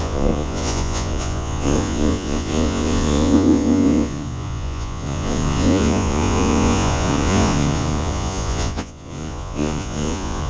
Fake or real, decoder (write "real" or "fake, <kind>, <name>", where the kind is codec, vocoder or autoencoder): fake, vocoder, Vocos